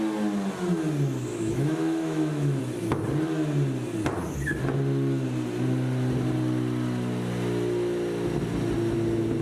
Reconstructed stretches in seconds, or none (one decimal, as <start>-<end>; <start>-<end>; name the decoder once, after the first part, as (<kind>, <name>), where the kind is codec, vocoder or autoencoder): 1.3-2.6 (autoencoder, DAC-VAE)